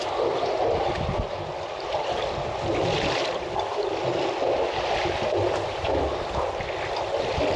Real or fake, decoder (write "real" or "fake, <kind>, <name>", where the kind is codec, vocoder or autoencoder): real